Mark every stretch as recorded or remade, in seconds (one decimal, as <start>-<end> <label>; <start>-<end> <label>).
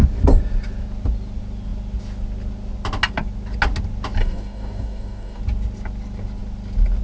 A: 0.0-4.2 recorded; 4.2-5.4 remade; 5.4-7.0 recorded